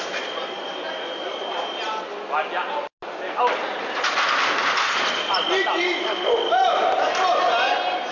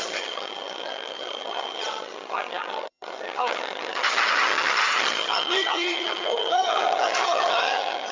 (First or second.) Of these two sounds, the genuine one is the first